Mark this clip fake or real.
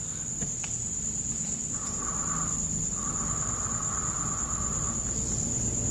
real